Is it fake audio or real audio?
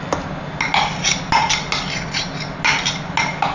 real